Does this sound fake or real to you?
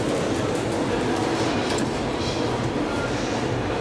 real